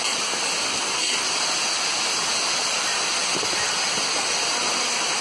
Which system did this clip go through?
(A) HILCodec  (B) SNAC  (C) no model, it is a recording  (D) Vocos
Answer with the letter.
C